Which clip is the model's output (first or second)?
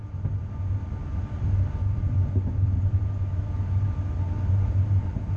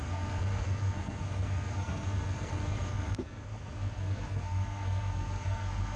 second